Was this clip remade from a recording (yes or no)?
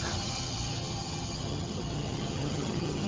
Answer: yes